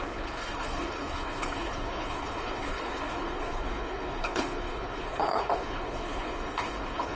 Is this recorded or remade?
remade